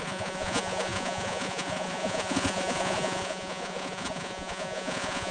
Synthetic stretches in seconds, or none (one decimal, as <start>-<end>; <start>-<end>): 0.0-5.3